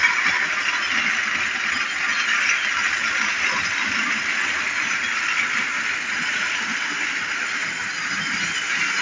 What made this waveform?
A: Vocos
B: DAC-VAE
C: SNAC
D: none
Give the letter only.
D